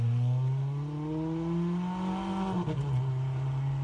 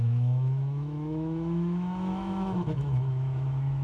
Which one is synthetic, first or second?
second